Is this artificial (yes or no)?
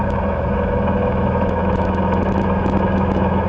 yes